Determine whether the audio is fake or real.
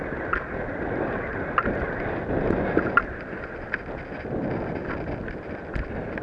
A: real